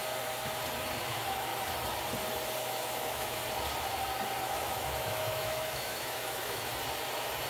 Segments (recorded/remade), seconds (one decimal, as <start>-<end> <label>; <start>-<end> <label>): 0.0-1.0 recorded; 1.0-1.5 remade; 1.5-2.6 recorded; 2.6-3.4 remade; 3.4-4.4 recorded; 4.4-6.7 remade; 6.7-7.5 recorded